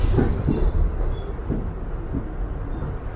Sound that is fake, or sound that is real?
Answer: real